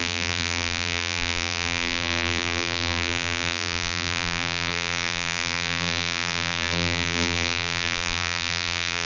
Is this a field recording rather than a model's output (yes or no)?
no